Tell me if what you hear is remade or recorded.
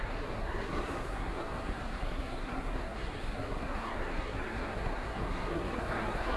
remade